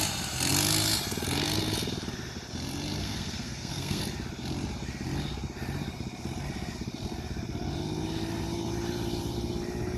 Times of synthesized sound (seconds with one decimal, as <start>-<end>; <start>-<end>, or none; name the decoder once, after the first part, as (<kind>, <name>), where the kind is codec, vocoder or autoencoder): 3.0-4.0 (codec, SNAC)